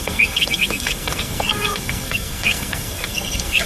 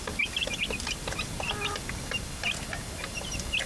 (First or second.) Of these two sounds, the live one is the second